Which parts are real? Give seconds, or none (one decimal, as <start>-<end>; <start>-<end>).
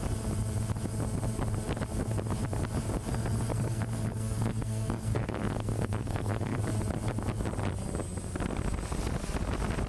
0.0-3.5; 6.6-9.9